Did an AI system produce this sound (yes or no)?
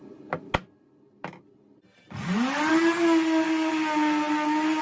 no